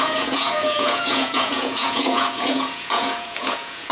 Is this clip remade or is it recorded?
remade